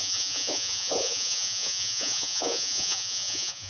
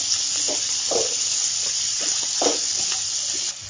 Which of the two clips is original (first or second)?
second